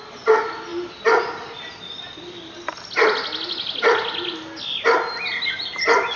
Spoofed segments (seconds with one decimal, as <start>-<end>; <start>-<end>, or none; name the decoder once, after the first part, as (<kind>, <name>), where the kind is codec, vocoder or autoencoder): none